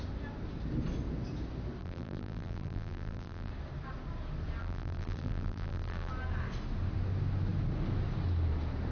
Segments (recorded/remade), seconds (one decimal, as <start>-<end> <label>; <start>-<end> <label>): 0.0-1.8 recorded; 1.8-3.5 remade; 3.5-4.6 recorded; 4.6-6.1 remade; 6.1-8.9 recorded